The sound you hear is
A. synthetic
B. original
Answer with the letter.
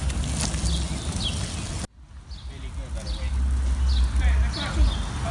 B